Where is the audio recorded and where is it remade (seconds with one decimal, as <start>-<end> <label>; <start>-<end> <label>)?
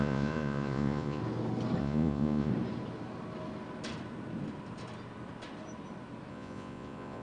0.0-1.2 remade; 1.2-1.8 recorded; 1.8-2.5 remade; 2.5-6.3 recorded; 6.3-7.2 remade